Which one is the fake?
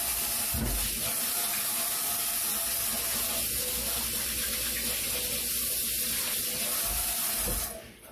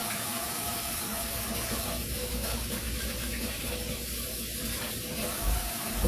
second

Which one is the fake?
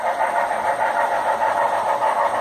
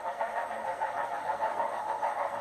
second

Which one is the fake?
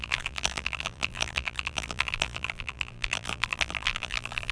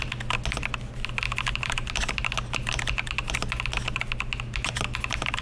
first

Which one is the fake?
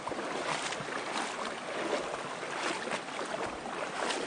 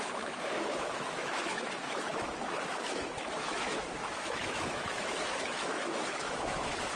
second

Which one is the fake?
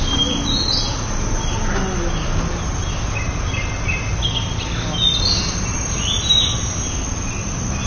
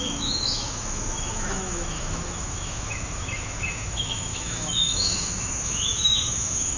second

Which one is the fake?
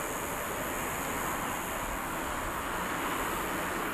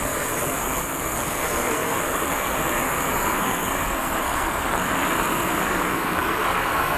second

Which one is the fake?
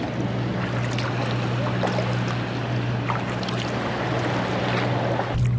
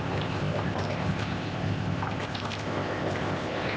second